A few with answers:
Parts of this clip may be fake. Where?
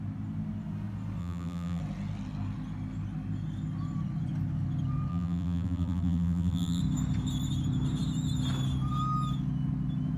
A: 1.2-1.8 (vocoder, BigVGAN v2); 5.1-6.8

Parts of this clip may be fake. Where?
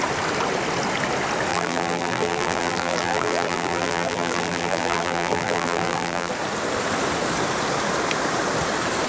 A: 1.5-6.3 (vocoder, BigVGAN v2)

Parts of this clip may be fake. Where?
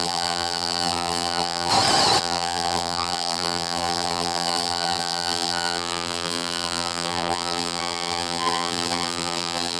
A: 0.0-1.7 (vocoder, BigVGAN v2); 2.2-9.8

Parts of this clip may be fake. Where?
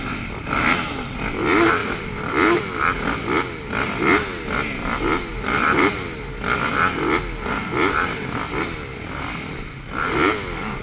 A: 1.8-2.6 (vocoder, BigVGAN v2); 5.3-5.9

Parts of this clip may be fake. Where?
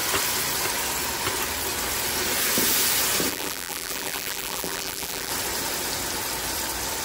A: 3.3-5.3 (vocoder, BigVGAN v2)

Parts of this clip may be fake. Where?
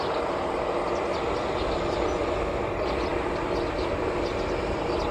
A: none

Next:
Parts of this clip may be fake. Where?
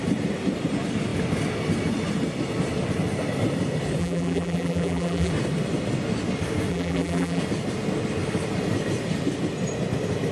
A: 4.0-5.3 (vocoder, BigVGAN v2); 6.7-7.4